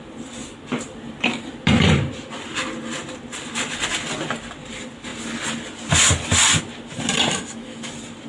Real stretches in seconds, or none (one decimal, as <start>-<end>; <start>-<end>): 0.0-7.3; 7.9-8.3